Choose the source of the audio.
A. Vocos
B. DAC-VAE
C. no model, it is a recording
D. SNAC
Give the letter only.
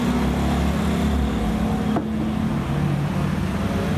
C